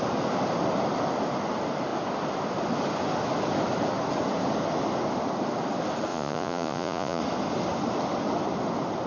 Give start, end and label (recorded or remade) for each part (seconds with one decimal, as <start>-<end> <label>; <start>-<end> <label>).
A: 0.0-6.1 recorded; 6.1-7.2 remade; 7.2-9.1 recorded